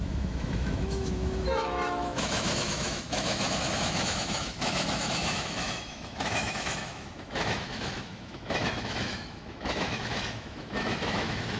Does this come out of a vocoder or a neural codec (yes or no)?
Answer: yes